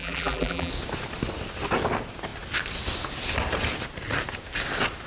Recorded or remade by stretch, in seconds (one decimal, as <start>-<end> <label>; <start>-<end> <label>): 0.0-0.7 remade; 0.7-5.1 recorded